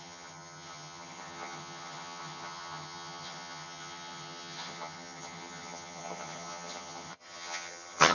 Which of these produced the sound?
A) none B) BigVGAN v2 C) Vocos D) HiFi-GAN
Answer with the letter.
D